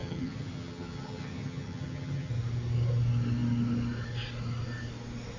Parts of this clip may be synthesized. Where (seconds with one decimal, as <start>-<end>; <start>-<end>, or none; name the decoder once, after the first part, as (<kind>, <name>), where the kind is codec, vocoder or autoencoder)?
0.0-2.3 (vocoder, HiFi-GAN)